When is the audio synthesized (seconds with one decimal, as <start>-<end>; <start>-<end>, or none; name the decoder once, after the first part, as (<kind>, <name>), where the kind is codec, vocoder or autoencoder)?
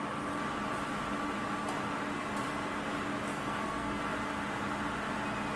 3.3-4.0 (codec, SNAC)